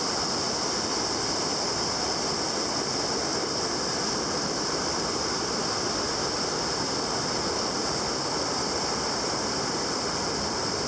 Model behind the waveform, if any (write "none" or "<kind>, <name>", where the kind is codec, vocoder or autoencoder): none